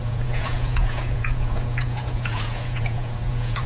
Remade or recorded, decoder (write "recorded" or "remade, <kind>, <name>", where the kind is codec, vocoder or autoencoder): remade, vocoder, Vocos